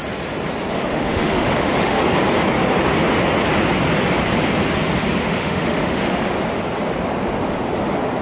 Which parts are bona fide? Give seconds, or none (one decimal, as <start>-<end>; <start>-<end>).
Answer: 0.0-0.7; 2.0-5.2; 6.2-8.2